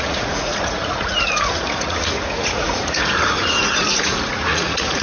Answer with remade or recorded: remade